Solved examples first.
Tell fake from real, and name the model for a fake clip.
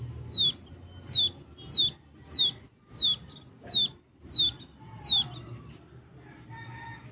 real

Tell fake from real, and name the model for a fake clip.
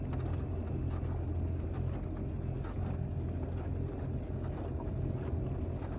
real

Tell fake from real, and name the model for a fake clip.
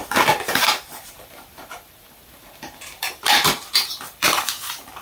fake, vocoder, BigVGAN v2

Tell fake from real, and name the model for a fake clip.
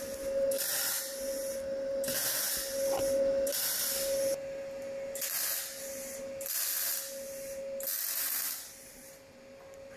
fake, vocoder, BigVGAN v2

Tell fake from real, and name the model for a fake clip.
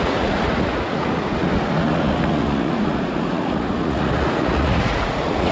fake, vocoder, Vocos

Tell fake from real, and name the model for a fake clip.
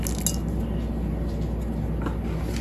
real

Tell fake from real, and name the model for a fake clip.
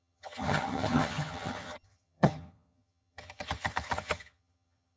fake, vocoder, HiFi-GAN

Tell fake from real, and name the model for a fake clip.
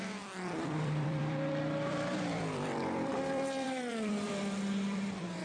fake, vocoder, BigVGAN v2